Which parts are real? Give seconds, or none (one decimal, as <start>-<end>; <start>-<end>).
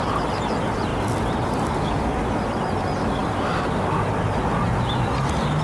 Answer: 0.0-5.6